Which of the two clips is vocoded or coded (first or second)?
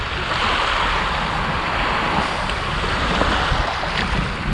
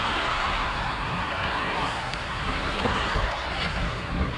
second